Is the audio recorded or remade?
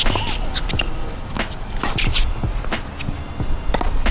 recorded